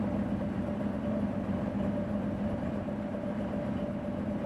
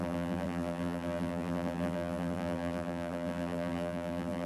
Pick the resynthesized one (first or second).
second